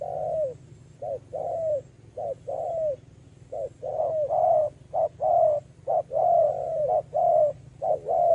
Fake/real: real